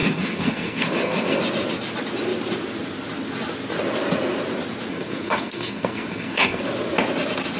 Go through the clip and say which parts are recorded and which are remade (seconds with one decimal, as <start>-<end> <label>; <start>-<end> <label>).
0.0-1.4 remade; 1.4-4.9 recorded; 4.9-6.6 remade; 6.6-7.6 recorded